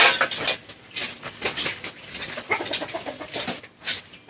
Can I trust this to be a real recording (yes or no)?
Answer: yes